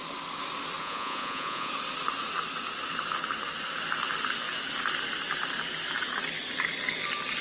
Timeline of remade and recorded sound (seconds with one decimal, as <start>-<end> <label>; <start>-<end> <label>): 0.0-0.8 recorded; 0.8-1.7 remade; 1.7-7.4 recorded